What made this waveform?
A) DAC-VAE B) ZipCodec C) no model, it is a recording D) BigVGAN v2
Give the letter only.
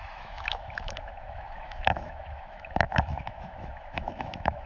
A